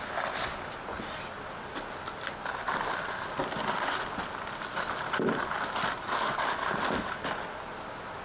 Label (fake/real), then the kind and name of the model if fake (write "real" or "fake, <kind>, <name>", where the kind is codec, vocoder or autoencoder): real